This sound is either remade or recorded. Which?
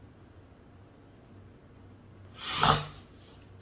recorded